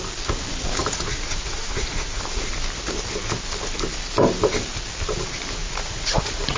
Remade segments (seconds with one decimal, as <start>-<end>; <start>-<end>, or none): 0.8-2.2; 5.6-6.6